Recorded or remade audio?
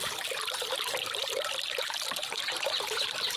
remade